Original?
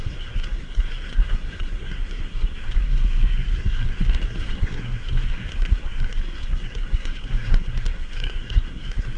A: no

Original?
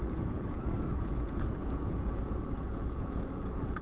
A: no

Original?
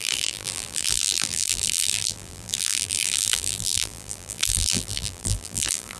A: no